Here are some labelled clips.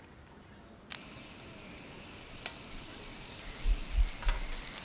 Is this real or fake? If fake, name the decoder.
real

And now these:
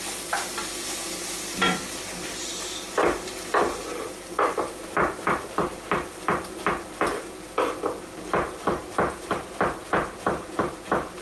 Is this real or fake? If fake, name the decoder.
real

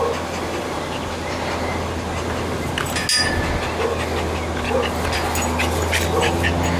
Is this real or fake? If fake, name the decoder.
real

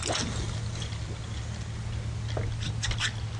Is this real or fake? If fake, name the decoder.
real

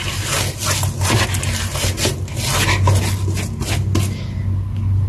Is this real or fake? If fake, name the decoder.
real